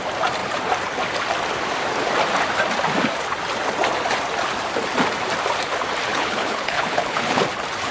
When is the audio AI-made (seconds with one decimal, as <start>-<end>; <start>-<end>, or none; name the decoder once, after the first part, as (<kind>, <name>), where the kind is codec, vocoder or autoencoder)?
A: 6.1-7.4 (codec, HILCodec)